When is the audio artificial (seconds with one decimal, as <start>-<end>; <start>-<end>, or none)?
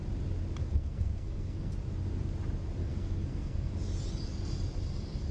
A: 0.6-1.7; 2.8-3.7